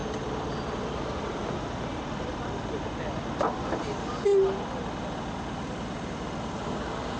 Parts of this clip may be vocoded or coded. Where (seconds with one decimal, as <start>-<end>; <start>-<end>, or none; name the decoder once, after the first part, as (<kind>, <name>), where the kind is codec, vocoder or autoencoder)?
none